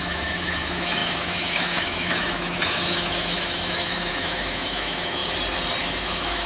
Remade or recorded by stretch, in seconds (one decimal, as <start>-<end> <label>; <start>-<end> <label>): 0.0-5.2 remade; 5.2-5.8 recorded; 5.8-6.5 remade

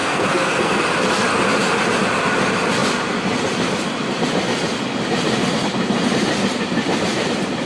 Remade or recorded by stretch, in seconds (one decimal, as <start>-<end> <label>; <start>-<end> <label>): 0.0-0.8 remade; 0.8-7.7 recorded

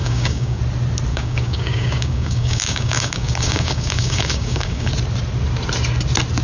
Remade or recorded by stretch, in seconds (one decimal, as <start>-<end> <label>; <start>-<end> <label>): 0.0-0.6 remade; 0.6-1.1 recorded; 1.1-4.9 remade; 4.9-6.4 recorded

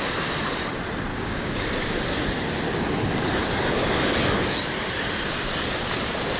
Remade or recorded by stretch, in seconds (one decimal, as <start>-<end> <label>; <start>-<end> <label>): 0.0-1.1 recorded; 1.1-1.6 remade; 1.6-6.4 recorded

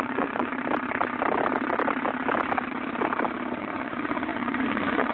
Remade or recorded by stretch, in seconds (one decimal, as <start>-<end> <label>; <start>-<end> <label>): 0.0-0.5 remade; 0.5-3.6 recorded; 3.6-5.1 remade

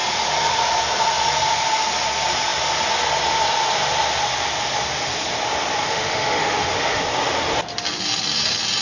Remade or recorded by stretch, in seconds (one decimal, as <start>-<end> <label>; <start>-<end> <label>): 0.0-5.8 recorded; 5.8-7.0 remade; 7.0-8.8 recorded

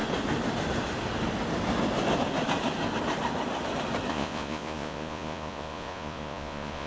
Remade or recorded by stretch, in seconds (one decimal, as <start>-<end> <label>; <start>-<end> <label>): 0.0-4.1 recorded; 4.1-6.9 remade